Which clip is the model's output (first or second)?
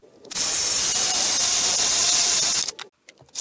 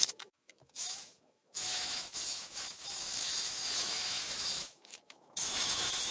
second